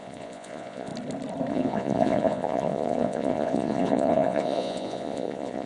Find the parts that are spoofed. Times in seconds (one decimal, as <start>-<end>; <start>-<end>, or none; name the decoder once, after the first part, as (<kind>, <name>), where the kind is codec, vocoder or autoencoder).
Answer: 0.0-0.9 (vocoder, Vocos); 1.5-5.7